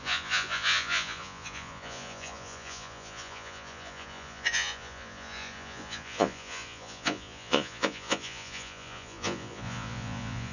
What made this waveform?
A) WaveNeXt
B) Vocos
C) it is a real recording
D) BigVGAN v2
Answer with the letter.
B